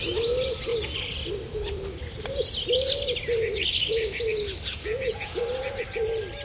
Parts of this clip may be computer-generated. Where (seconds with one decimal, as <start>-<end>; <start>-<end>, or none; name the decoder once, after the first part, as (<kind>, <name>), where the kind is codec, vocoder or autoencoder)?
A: 4.7-5.4 (vocoder, Vocos)